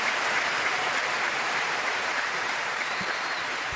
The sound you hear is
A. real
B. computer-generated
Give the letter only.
B